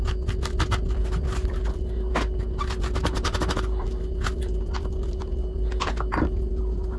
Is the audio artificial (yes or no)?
no